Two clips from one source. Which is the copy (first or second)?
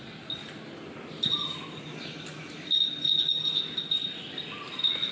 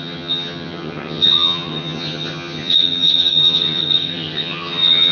second